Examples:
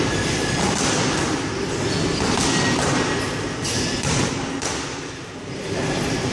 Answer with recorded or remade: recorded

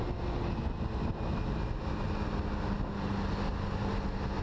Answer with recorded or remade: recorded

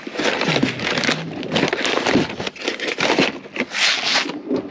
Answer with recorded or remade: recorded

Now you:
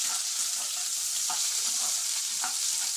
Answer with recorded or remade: recorded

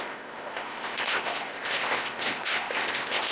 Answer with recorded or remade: remade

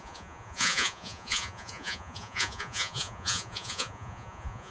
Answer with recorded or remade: remade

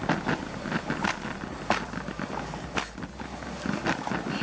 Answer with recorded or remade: recorded